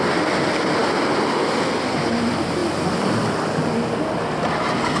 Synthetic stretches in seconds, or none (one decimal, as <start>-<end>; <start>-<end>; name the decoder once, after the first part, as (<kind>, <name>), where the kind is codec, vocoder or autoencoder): none